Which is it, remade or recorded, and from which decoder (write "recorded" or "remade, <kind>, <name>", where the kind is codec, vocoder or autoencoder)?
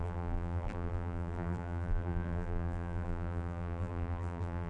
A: remade, vocoder, BigVGAN v2